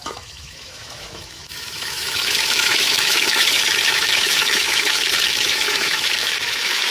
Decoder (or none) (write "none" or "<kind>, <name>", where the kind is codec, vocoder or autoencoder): autoencoder, DAC-VAE